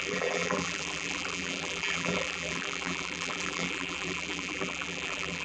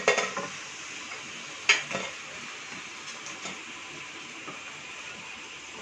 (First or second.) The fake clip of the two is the first